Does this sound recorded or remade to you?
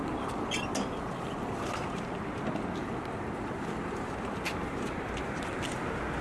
recorded